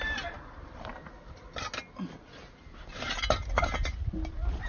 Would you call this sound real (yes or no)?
yes